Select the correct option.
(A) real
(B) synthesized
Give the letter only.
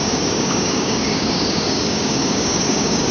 B